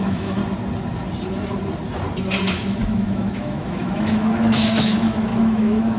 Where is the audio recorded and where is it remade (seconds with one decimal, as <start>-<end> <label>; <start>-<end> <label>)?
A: 0.0-0.4 remade; 0.4-2.5 recorded; 2.5-6.0 remade